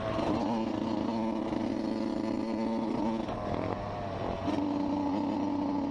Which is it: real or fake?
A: real